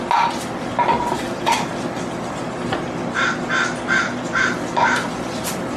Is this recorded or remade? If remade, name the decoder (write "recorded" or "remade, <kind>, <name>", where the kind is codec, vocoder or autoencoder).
recorded